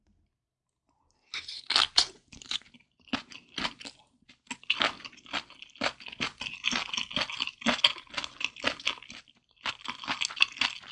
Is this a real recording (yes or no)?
yes